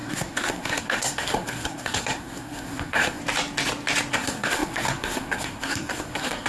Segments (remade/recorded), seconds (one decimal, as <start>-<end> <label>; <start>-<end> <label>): 0.0-3.2 remade; 3.2-4.1 recorded; 4.1-6.5 remade